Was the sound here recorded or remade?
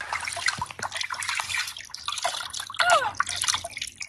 recorded